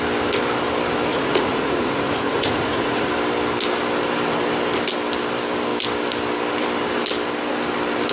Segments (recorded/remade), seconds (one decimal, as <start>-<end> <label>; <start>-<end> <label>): 0.0-1.1 recorded; 1.1-3.1 remade; 3.1-8.1 recorded